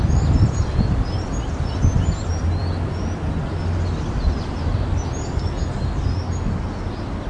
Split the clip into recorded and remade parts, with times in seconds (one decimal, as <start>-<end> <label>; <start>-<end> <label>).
0.0-7.3 recorded